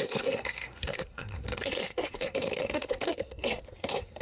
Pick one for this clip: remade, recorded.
remade